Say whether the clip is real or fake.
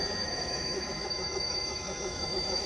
fake